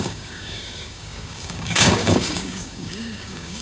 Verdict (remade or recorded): remade